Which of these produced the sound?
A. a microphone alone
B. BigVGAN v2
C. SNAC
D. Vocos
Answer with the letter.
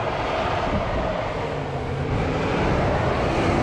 A